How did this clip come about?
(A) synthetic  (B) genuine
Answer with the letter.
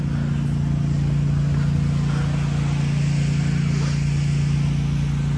B